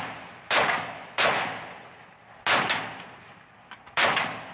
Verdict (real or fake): real